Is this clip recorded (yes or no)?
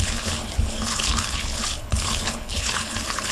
no